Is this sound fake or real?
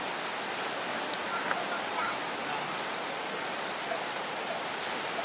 real